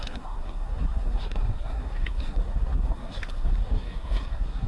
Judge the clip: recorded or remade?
remade